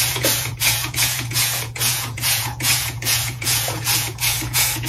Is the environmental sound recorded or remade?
remade